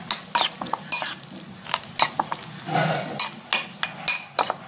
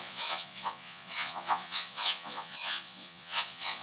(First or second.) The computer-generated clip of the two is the second